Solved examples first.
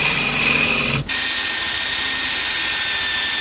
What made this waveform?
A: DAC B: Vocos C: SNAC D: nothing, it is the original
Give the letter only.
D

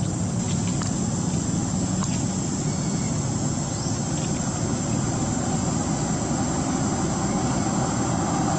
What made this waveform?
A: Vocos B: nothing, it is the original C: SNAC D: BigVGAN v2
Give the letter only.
B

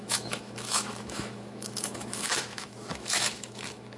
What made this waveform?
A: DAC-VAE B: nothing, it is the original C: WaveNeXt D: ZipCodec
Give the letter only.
A